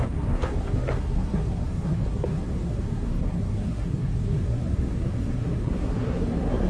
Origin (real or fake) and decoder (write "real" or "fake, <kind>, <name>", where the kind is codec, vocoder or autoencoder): fake, codec, SNAC